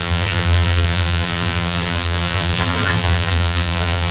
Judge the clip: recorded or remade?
remade